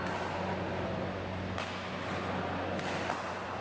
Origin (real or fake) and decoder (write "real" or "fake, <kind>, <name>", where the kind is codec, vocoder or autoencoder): real